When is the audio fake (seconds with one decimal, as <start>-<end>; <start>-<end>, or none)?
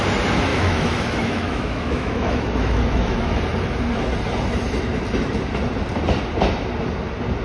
0.5-3.4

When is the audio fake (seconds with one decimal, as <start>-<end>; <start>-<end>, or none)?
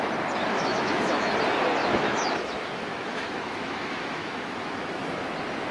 0.5-1.3; 1.8-5.2